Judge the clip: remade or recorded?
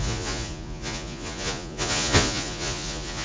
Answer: remade